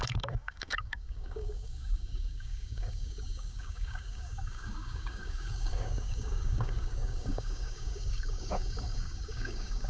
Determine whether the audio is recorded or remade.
remade